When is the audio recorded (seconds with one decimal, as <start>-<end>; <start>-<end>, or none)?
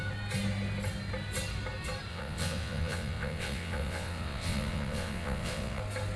0.0-2.1; 5.8-6.2